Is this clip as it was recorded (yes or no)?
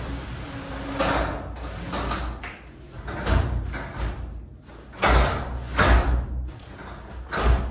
yes